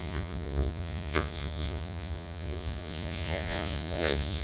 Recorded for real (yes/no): no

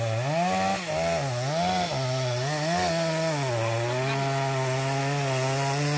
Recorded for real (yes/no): yes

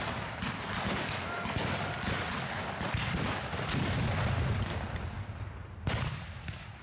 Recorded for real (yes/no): yes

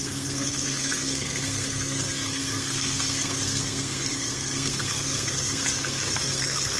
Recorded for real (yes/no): no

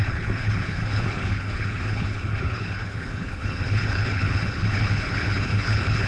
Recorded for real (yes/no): no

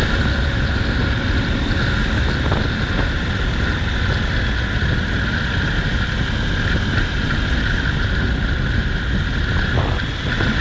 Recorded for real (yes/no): yes